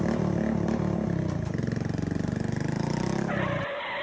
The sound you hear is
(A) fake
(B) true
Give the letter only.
B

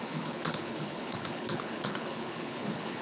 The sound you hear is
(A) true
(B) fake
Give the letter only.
B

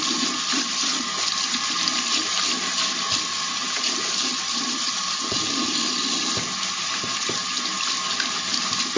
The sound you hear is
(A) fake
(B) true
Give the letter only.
B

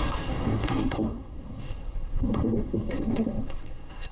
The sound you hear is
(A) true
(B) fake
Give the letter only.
B